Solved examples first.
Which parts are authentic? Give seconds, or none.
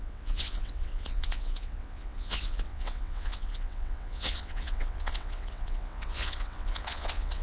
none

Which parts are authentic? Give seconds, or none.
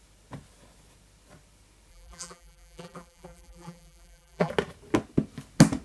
0.0-1.9; 4.5-5.8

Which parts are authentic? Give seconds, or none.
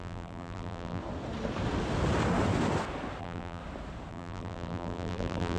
1.0-3.2; 3.6-4.1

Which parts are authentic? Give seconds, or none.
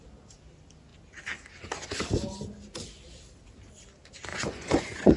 0.0-4.3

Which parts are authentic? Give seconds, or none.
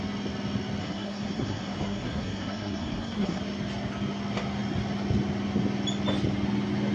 0.0-0.8; 3.4-6.9